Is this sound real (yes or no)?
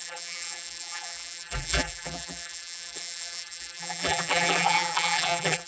no